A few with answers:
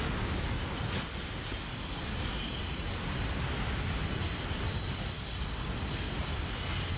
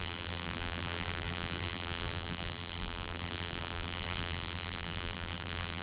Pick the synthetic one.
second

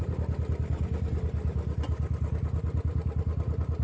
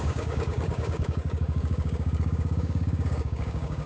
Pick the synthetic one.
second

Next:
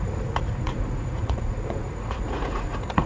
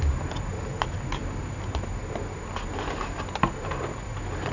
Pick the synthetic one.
first